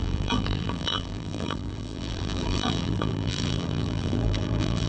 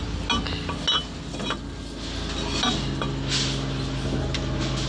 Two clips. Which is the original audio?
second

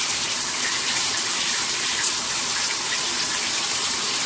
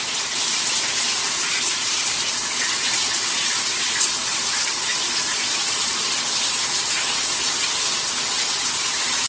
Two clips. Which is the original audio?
second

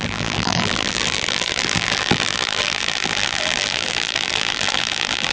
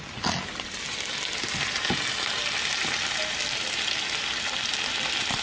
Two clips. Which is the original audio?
second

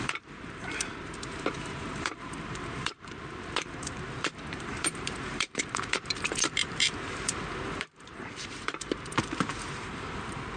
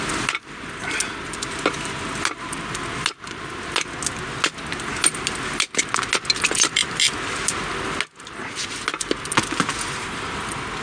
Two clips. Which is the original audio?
second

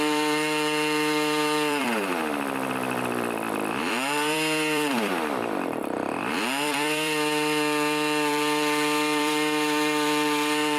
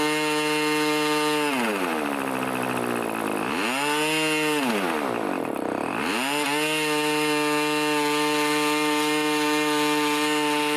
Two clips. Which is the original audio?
second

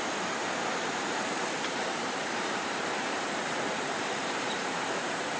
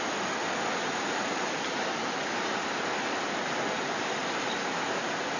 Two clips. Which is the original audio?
second